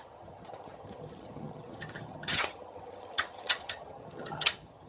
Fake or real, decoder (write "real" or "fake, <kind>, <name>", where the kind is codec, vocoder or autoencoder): fake, vocoder, HiFi-GAN